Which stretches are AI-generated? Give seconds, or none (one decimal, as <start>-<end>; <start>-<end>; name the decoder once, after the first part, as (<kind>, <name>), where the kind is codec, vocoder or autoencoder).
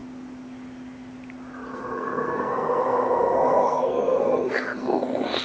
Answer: 1.7-5.4 (codec, SNAC)